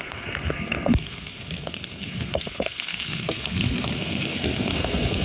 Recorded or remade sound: remade